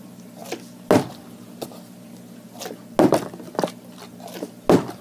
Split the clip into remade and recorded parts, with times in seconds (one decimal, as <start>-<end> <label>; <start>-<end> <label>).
0.0-5.0 recorded